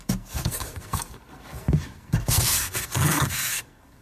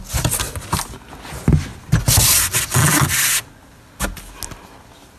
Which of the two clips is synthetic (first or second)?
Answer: first